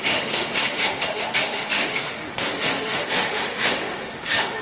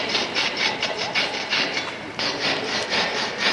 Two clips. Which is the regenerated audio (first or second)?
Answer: first